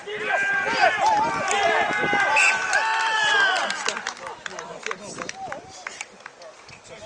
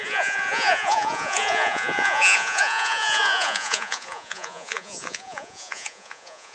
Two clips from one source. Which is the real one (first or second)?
first